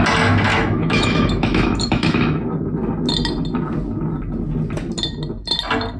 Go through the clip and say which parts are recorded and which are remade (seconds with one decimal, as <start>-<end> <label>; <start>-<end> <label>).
0.0-0.5 recorded; 0.5-2.5 remade; 2.5-6.0 recorded